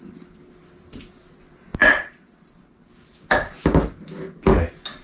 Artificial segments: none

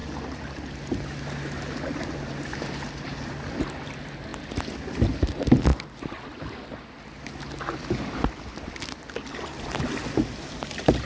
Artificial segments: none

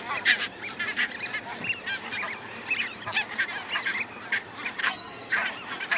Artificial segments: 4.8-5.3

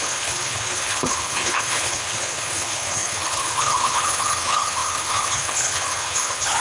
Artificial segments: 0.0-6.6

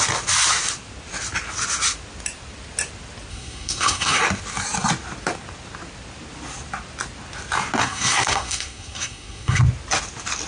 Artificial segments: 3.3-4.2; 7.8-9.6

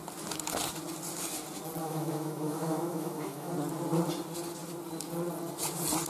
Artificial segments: 1.8-3.5